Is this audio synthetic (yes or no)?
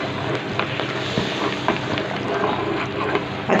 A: no